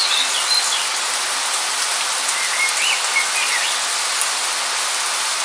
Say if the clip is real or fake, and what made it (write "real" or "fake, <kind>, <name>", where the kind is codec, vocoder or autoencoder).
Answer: real